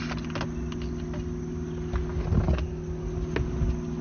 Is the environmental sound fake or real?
real